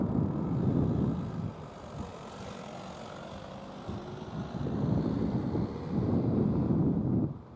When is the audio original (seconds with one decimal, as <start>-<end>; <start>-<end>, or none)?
0.0-7.6

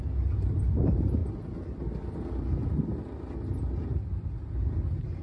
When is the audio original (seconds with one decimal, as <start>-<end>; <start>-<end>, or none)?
0.0-5.2

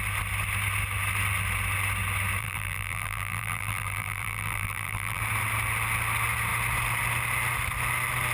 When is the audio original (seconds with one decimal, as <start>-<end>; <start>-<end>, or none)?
0.0-2.4; 5.2-8.3

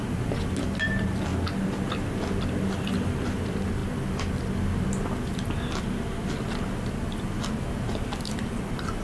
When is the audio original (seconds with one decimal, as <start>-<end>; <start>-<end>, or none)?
1.3-2.1; 3.8-7.7

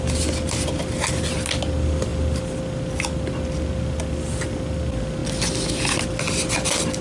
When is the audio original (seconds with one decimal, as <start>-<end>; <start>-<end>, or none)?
0.0-7.0

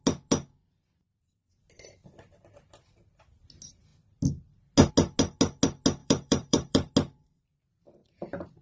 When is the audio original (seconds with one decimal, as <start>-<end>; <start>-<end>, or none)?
0.0-6.0; 6.9-8.0

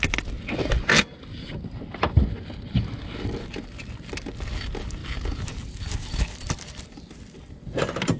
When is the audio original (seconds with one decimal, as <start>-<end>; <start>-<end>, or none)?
0.0-5.0

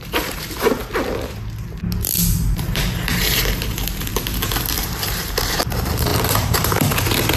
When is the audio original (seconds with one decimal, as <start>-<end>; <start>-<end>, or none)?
0.8-2.3; 4.1-4.8